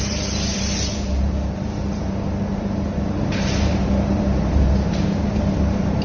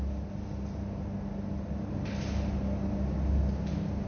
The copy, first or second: first